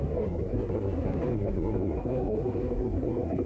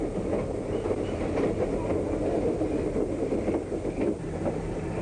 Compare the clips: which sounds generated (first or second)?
first